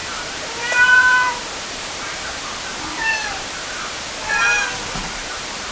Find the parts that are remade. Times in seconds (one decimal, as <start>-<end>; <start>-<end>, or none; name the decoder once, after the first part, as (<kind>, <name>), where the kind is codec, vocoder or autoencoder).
0.0-2.4 (vocoder, BigVGAN v2); 3.2-4.0; 5.0-5.7